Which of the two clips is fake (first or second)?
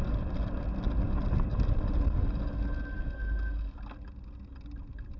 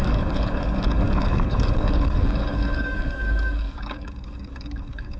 second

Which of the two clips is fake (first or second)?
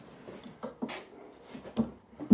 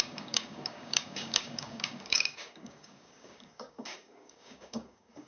second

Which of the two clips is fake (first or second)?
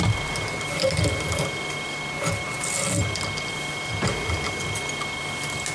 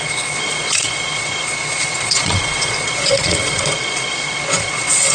second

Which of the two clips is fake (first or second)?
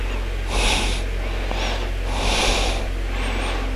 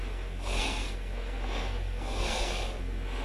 second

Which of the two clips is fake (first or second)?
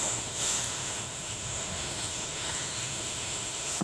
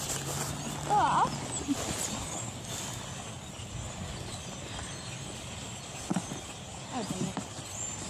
first